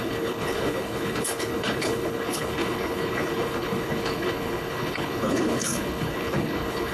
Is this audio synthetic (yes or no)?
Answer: yes